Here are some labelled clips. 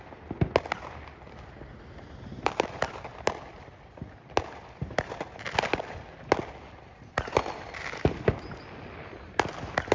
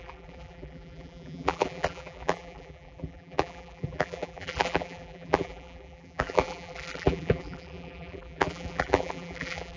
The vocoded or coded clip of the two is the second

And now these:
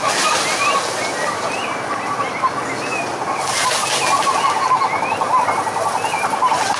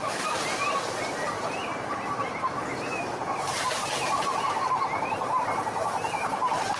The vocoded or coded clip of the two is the second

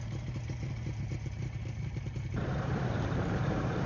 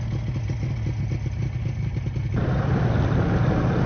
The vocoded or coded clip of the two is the first